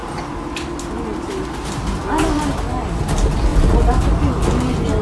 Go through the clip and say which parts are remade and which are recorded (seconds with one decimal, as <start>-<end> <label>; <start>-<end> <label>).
0.0-5.0 recorded